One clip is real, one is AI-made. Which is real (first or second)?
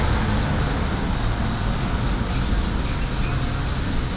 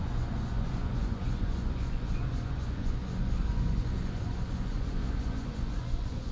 first